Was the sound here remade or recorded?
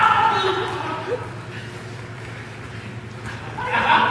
recorded